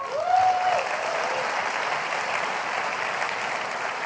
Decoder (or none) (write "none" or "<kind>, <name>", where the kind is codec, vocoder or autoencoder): none